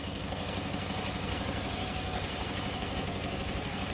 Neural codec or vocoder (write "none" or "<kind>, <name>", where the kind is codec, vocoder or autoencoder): codec, SNAC